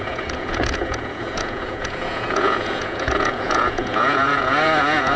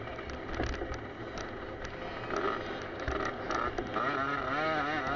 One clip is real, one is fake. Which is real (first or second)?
second